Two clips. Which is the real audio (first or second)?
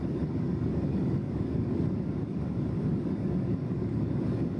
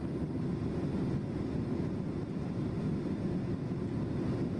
second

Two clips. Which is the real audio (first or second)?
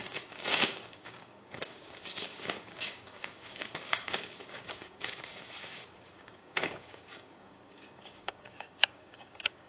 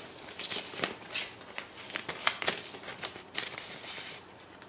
second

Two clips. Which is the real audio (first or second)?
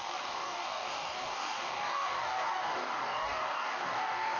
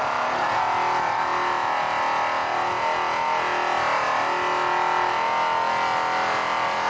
second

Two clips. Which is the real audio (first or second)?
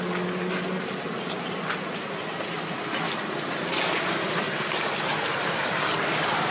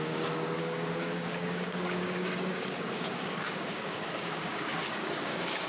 first